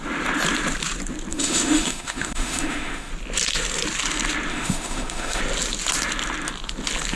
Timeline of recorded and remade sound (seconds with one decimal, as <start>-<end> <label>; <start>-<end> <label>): 0.0-1.3 recorded; 1.3-3.1 remade; 3.1-4.5 recorded; 4.5-5.4 remade; 5.4-7.2 recorded